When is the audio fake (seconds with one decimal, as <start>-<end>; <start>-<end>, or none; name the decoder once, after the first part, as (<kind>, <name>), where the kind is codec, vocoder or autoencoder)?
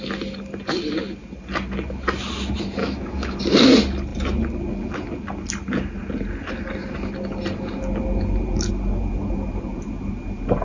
2.8-3.4 (autoencoder, DAC-VAE)